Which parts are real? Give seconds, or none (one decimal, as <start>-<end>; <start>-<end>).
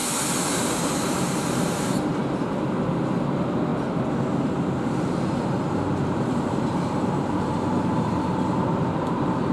0.0-0.6; 2.2-2.9; 3.7-6.1